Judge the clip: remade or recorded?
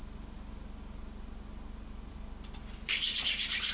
recorded